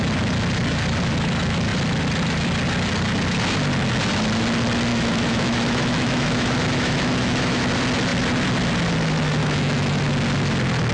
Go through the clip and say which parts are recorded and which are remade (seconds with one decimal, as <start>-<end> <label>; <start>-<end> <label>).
0.0-4.9 recorded; 4.9-7.6 remade; 7.6-9.4 recorded; 9.4-10.0 remade; 10.0-10.9 recorded